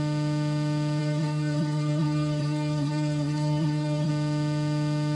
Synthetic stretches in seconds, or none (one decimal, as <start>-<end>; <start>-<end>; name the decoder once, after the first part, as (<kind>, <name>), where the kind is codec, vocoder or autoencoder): 1.0-4.1 (codec, SNAC)

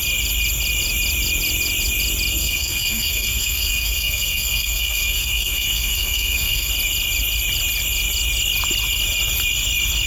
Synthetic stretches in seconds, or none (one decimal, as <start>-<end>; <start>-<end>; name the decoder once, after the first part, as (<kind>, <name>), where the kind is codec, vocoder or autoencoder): 2.3-6.7 (codec, SNAC)

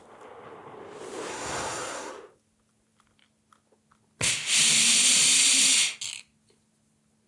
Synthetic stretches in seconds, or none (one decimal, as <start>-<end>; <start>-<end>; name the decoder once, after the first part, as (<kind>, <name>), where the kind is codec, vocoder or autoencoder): 1.3-2.1 (codec, SNAC)

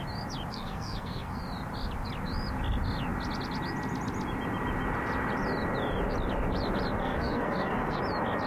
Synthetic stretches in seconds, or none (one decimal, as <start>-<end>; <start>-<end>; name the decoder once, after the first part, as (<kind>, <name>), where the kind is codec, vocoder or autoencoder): 0.5-1.4 (codec, SNAC); 7.0-8.0

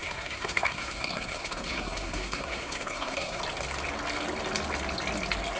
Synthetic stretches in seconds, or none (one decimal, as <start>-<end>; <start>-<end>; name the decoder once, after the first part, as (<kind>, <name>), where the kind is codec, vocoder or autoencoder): 0.0-3.4 (codec, SNAC)